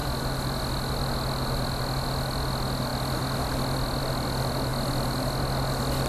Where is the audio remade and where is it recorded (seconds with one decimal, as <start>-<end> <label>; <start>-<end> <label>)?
0.0-6.1 recorded